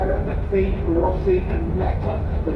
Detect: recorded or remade remade